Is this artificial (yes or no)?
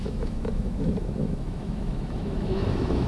yes